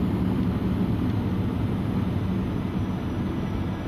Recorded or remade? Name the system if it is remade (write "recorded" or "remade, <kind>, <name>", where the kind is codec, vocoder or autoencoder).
recorded